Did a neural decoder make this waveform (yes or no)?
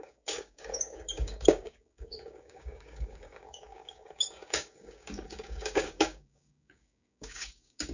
yes